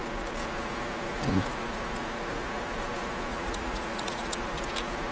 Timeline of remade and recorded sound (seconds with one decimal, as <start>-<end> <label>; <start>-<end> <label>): 0.0-3.3 recorded; 3.3-4.4 remade; 4.4-5.1 recorded